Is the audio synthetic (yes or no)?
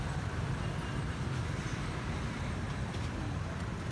no